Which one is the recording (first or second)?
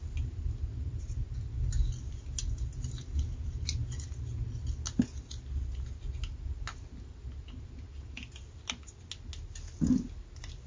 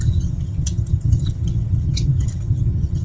first